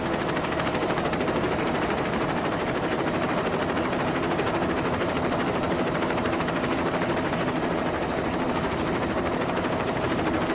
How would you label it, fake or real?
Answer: fake